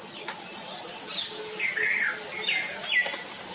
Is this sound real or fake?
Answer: real